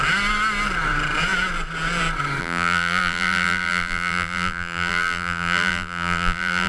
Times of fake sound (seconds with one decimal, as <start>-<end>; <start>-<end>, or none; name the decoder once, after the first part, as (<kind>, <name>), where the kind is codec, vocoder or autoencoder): 2.4-6.7 (vocoder, BigVGAN v2)